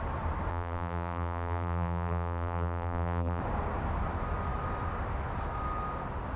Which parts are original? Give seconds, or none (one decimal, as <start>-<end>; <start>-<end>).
0.0-0.5; 3.4-6.4